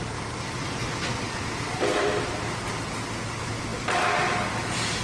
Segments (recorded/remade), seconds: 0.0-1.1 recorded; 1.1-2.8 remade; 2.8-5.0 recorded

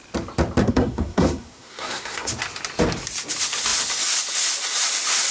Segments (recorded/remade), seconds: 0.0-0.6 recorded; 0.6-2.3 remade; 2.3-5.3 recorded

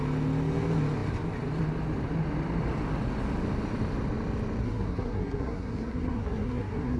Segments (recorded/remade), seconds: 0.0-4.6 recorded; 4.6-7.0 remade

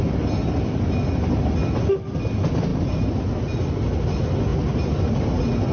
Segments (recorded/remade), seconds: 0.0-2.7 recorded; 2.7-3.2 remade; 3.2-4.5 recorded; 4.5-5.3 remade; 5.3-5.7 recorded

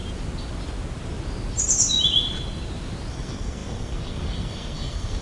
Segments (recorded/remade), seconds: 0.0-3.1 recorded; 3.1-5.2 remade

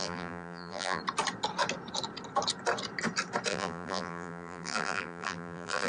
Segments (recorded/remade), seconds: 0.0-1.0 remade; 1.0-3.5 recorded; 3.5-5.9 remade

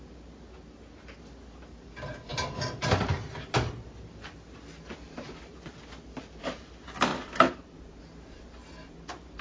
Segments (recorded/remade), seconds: 0.0-9.4 recorded